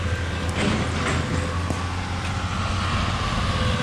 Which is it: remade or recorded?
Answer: recorded